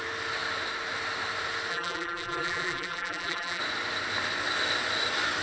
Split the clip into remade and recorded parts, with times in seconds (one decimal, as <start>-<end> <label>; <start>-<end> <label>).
0.0-1.7 recorded; 1.7-3.6 remade; 3.6-5.4 recorded